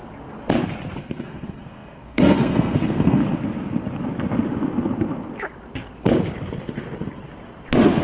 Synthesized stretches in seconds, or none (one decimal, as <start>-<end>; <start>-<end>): 1.0-3.2